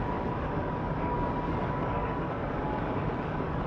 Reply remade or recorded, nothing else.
remade